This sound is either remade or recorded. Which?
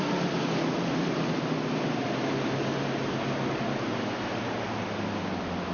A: recorded